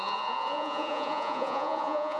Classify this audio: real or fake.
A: fake